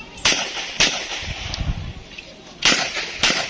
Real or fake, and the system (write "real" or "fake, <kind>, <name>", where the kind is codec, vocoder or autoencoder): real